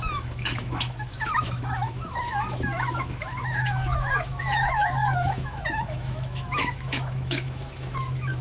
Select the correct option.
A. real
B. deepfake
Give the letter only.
B